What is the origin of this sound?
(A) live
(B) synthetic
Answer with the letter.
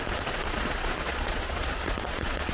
B